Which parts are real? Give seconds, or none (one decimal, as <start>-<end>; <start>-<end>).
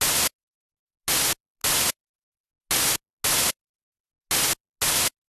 0.0-5.3